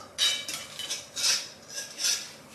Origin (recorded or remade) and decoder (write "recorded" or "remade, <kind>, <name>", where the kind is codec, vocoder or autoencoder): recorded